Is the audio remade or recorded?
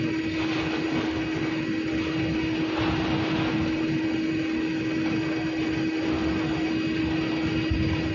recorded